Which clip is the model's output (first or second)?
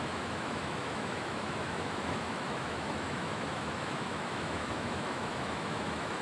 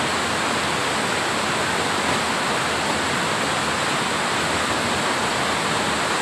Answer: first